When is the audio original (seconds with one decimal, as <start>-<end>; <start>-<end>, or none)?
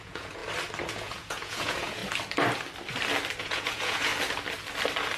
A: 0.4-0.9; 2.0-3.4; 4.1-5.2